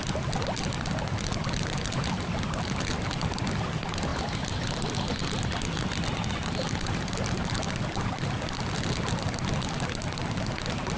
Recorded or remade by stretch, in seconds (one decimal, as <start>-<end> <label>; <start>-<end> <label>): 0.0-11.0 recorded

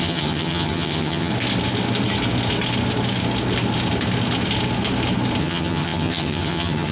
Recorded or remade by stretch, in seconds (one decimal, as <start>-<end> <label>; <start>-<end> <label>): 0.0-1.3 remade; 1.3-5.4 recorded; 5.4-6.9 remade

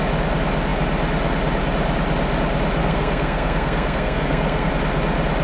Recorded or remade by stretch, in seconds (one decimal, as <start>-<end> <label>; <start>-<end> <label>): 0.0-2.8 recorded; 2.8-4.7 remade; 4.7-5.4 recorded

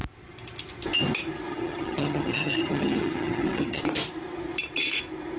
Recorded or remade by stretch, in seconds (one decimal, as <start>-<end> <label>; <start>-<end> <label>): 0.0-1.5 recorded; 1.5-3.8 remade; 3.8-5.4 recorded

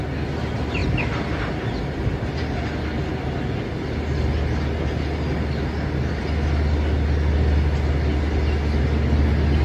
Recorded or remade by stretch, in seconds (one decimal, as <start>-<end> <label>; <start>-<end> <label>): 0.0-9.6 recorded

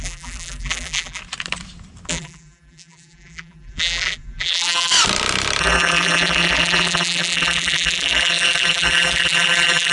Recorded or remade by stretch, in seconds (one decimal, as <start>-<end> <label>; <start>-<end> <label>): 0.0-1.2 remade; 1.2-2.1 recorded; 2.1-4.9 remade; 4.9-5.6 recorded; 5.6-9.9 remade

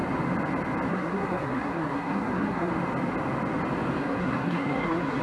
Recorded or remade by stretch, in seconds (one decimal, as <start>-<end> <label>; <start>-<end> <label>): 0.0-0.9 recorded; 0.9-2.7 remade; 2.7-4.0 recorded; 4.0-5.2 remade

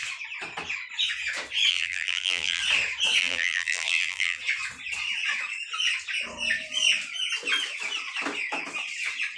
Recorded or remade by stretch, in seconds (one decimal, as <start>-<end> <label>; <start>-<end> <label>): 0.0-1.7 recorded; 1.7-2.6 remade; 2.6-3.2 recorded; 3.2-4.4 remade; 4.4-9.4 recorded